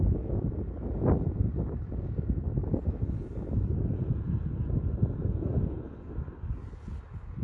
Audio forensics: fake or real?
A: real